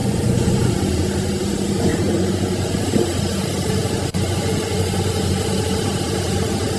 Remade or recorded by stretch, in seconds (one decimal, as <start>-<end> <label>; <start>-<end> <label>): 0.0-0.7 remade; 0.7-1.9 recorded; 1.9-2.7 remade; 2.7-3.8 recorded; 3.8-5.3 remade; 5.3-6.8 recorded